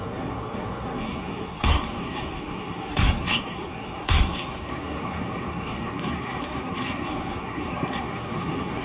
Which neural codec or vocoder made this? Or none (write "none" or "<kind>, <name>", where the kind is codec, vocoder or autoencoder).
codec, SNAC